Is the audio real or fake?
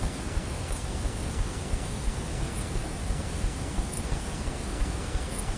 fake